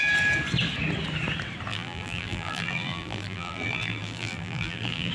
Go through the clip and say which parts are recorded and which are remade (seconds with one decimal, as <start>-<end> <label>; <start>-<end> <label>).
0.0-1.7 recorded; 1.7-5.1 remade